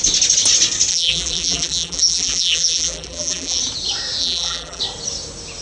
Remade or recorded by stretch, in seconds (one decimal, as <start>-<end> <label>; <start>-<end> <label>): 0.0-0.9 recorded; 0.9-3.6 remade; 3.6-4.2 recorded; 4.2-4.8 remade; 4.8-5.6 recorded